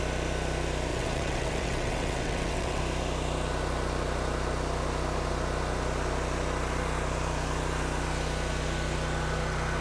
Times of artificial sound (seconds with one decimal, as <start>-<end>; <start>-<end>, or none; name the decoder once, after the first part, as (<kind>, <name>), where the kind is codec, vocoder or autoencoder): 0.9-2.8 (vocoder, WaveNeXt)